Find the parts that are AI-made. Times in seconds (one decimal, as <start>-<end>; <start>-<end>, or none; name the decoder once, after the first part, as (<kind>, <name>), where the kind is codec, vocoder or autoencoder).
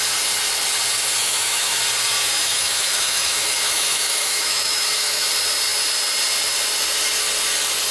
1.2-1.8 (autoencoder, DAC-VAE); 2.4-5.3